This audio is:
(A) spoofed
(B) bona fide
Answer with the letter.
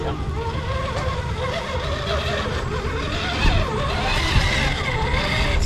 B